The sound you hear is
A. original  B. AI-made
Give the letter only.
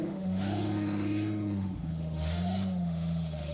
B